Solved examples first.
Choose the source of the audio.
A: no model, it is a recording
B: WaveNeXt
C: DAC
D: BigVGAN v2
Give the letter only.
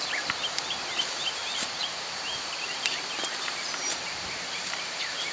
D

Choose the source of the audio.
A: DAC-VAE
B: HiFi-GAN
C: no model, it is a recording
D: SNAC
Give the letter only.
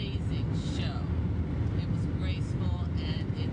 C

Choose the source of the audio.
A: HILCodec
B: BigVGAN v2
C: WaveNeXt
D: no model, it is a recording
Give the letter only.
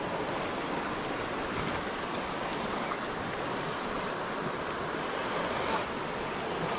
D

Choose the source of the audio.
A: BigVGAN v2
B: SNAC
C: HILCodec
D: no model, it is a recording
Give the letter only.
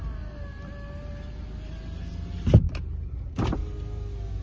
D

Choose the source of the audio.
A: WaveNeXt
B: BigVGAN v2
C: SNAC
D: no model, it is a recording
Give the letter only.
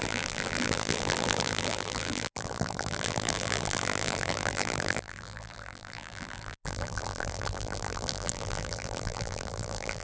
B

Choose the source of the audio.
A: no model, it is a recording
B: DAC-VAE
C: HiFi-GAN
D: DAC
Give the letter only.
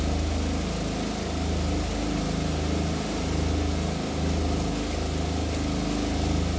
A